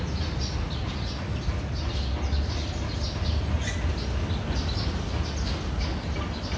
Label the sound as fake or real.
real